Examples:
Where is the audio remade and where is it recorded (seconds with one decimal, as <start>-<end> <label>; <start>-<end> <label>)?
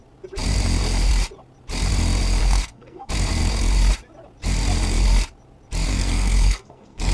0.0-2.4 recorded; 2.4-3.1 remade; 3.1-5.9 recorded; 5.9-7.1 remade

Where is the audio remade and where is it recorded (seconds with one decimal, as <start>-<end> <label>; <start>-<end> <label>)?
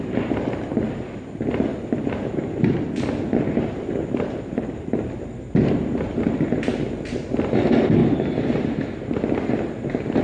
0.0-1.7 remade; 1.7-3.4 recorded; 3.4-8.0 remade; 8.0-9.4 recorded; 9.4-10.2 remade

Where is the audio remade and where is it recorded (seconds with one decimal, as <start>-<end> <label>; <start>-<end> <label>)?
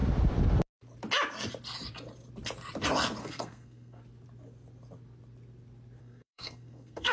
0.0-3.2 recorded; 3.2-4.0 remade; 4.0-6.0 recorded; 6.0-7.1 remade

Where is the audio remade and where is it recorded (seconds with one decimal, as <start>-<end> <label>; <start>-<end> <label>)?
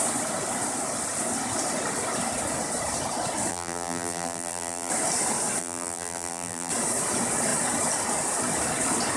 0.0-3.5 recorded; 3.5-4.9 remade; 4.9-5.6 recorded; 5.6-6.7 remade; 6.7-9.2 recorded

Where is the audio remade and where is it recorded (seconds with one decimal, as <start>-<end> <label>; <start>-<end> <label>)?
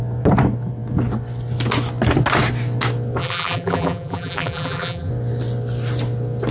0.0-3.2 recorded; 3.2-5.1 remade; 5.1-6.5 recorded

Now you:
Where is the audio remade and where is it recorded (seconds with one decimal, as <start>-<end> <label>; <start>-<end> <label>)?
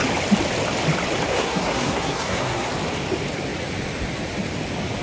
0.0-1.3 recorded; 1.3-2.7 remade; 2.7-5.0 recorded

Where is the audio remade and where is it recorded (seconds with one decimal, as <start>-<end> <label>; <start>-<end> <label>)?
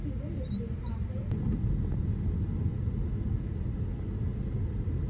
0.0-5.1 recorded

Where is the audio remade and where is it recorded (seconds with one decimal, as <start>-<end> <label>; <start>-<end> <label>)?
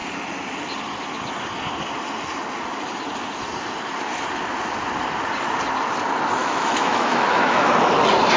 0.0-6.4 recorded; 6.4-7.7 remade; 7.7-8.4 recorded